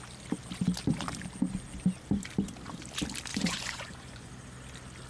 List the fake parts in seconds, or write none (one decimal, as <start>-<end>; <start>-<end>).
3.3-4.3